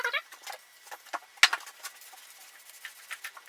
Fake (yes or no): no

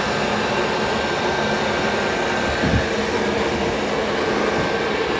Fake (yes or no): no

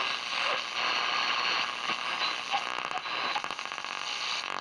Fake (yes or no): no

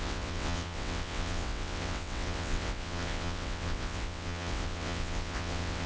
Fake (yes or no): yes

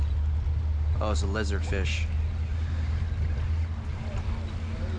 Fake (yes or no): no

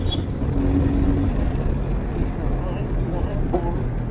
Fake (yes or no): no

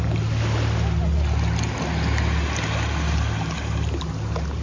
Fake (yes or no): no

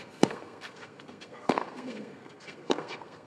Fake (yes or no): yes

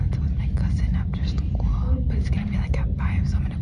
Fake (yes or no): yes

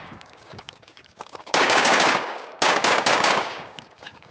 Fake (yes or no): yes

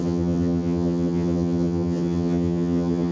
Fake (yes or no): yes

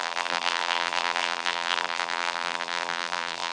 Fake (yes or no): yes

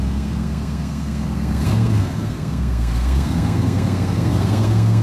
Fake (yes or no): yes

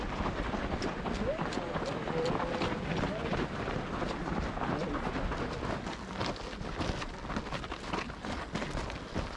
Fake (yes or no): no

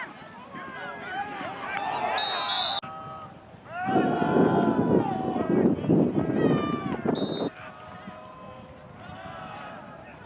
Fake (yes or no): no